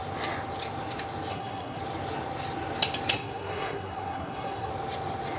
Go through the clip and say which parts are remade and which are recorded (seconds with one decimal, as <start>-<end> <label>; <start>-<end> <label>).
0.0-1.3 recorded; 1.3-1.8 remade; 1.8-3.1 recorded; 3.1-4.7 remade; 4.7-5.4 recorded